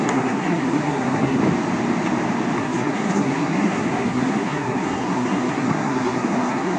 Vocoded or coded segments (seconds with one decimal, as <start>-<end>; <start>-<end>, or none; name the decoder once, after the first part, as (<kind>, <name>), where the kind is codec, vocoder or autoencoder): 0.0-1.4 (codec, SNAC); 2.6-6.8